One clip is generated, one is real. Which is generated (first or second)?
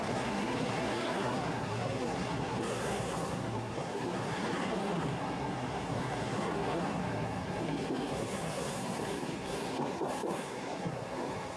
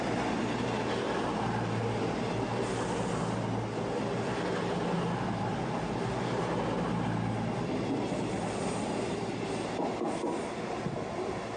first